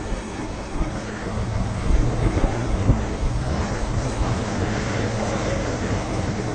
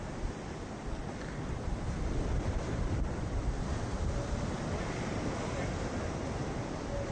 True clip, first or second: second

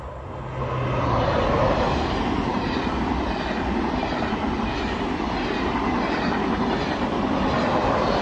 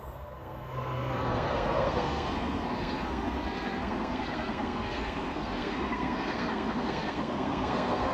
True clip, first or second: first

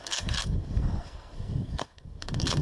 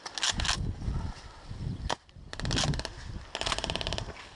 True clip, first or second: second